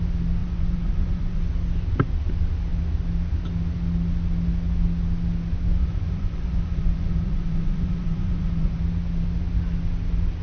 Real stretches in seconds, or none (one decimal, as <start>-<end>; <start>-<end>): 0.0-0.4; 1.4-5.8; 8.8-10.4